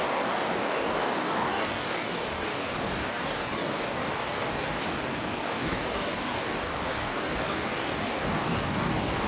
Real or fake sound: fake